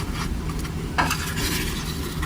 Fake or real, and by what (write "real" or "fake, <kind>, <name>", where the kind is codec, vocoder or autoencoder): real